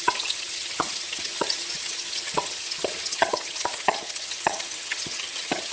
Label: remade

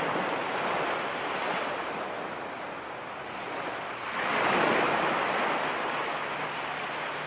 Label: recorded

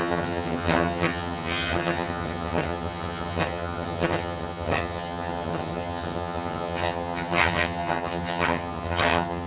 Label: remade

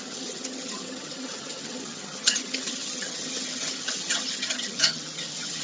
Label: remade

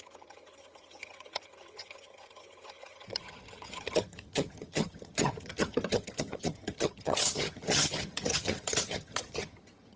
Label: remade